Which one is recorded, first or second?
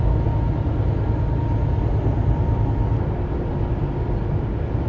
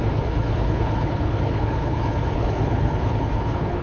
first